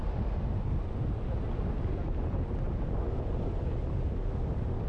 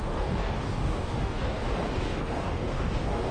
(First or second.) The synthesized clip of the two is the second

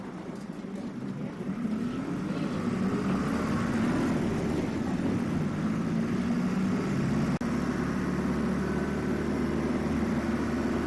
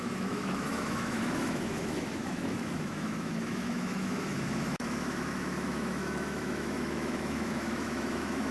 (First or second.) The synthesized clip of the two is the second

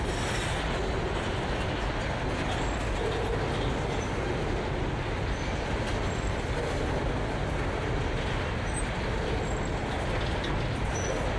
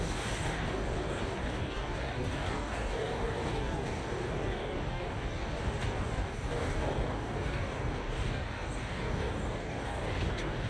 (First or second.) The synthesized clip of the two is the second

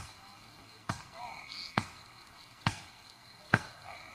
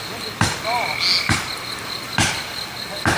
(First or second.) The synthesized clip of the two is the first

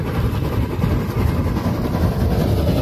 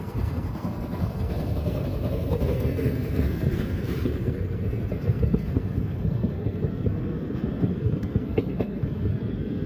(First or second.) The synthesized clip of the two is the second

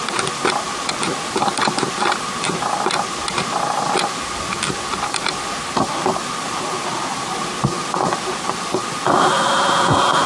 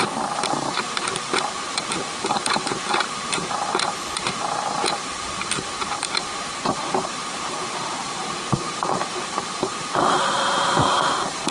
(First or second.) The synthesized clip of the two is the second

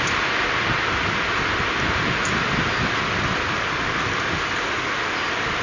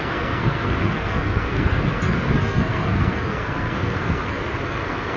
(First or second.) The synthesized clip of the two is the second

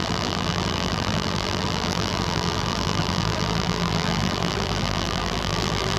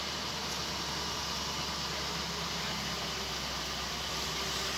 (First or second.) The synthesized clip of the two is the first